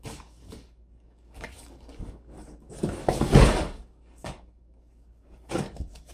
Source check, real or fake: fake